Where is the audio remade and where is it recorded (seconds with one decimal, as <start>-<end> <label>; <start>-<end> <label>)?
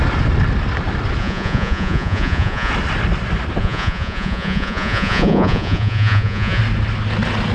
0.0-1.2 recorded; 1.2-2.7 remade; 2.7-3.6 recorded; 3.6-6.6 remade; 6.6-7.5 recorded